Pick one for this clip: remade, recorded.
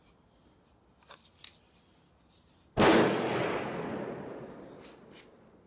recorded